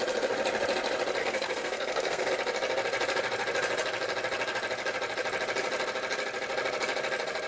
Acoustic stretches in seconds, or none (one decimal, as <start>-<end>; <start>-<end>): 0.0-1.2; 2.3-7.5